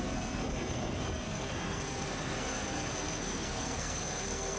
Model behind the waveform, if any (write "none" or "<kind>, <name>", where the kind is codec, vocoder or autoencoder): codec, SNAC